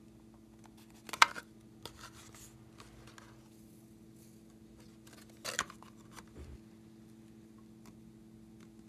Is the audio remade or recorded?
recorded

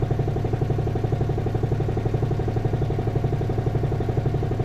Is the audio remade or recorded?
recorded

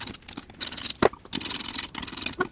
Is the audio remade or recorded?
recorded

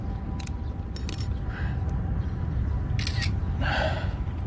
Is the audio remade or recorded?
recorded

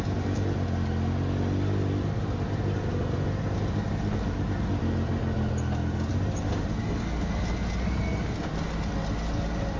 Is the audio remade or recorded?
recorded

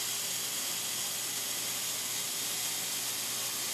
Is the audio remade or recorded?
recorded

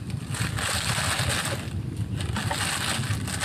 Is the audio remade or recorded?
recorded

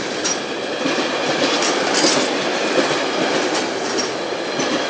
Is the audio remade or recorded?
recorded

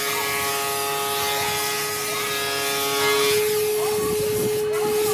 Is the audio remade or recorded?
recorded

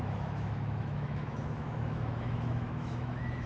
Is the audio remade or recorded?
remade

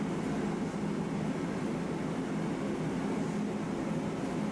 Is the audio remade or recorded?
recorded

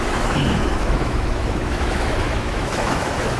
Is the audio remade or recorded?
remade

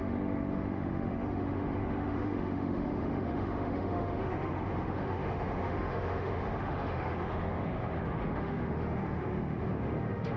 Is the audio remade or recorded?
remade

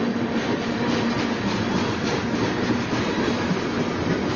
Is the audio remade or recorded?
recorded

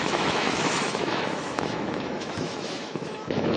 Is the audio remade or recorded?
remade